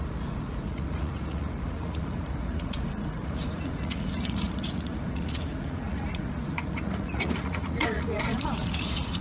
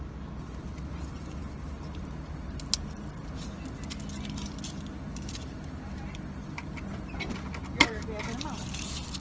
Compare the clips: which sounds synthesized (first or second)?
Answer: first